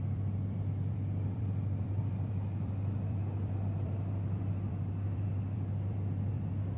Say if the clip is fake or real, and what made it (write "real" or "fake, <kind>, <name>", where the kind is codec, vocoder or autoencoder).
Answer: fake, vocoder, BigVGAN v2